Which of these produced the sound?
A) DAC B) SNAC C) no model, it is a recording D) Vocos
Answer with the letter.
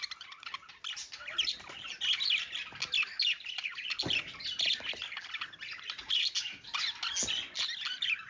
C